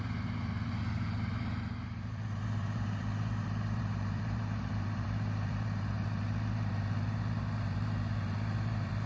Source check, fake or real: fake